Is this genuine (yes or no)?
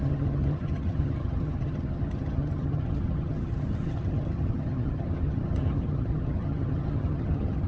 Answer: no